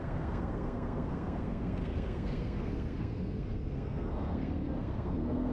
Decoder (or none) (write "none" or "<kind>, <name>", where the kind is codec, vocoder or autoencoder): codec, SNAC